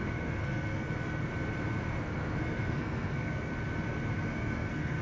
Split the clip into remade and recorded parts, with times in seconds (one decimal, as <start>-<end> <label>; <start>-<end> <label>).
0.0-1.3 remade; 1.3-1.8 recorded; 1.8-3.5 remade; 3.5-4.1 recorded; 4.1-5.0 remade